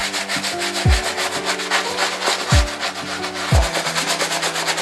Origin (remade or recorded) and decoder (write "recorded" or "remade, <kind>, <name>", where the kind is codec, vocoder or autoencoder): recorded